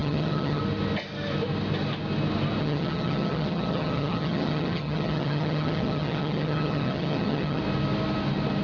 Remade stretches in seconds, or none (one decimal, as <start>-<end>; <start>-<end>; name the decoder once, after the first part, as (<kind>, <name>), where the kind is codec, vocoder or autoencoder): 0.0-0.6 (vocoder, HiFi-GAN); 2.6-7.6

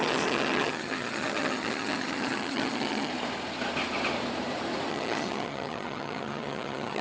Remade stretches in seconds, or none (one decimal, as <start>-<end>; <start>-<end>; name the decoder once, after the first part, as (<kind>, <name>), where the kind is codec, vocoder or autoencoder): 0.0-3.1 (vocoder, HiFi-GAN); 4.9-7.0

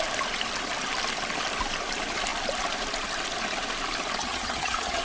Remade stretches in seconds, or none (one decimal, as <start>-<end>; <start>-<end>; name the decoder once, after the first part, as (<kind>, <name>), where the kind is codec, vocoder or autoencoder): 4.2-5.0 (vocoder, HiFi-GAN)

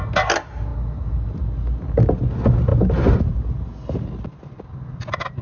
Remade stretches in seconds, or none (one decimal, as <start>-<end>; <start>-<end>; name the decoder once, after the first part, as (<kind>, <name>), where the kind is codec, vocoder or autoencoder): none